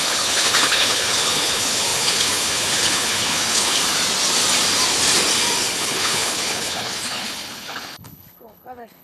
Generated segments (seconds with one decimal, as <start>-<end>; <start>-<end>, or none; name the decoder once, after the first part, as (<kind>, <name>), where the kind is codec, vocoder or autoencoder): 0.0-3.8 (codec, HILCodec); 5.8-9.0